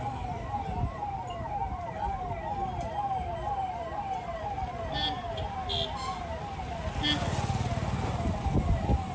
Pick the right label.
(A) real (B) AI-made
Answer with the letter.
A